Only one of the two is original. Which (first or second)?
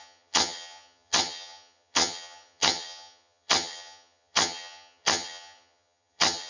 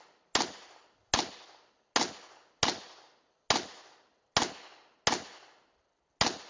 second